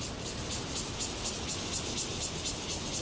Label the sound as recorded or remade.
recorded